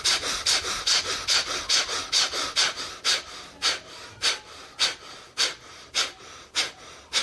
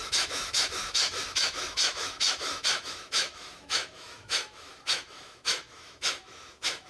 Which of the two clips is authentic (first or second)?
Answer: first